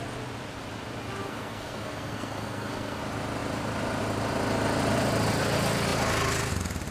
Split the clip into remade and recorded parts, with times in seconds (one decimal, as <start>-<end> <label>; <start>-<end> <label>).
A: 0.0-1.2 recorded; 1.2-3.0 remade; 3.0-6.9 recorded